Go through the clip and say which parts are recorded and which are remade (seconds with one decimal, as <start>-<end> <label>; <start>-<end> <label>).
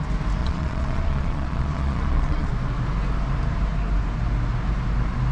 0.0-0.4 recorded; 0.4-2.5 remade; 2.5-5.3 recorded